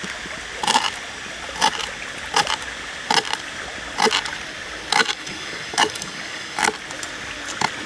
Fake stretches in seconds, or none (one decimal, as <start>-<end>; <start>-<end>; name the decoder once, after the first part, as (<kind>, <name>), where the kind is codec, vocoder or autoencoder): 5.0-6.6 (codec, DAC)